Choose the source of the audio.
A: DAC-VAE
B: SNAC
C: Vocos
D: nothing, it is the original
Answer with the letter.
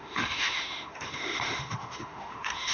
A